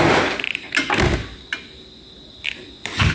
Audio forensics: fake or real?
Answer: real